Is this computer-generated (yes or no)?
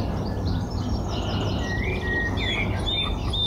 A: no